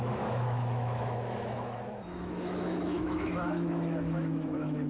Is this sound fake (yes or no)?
yes